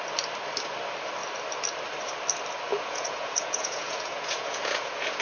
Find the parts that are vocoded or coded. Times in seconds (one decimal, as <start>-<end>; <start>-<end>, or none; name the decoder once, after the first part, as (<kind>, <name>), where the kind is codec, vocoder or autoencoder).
2.7-5.2 (vocoder, Vocos)